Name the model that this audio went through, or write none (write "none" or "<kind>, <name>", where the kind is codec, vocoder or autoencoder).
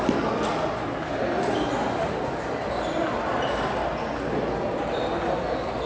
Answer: none